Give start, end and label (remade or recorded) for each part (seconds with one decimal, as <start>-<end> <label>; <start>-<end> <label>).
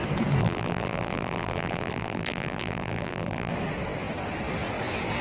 0.0-0.4 recorded; 0.4-3.5 remade; 3.5-5.2 recorded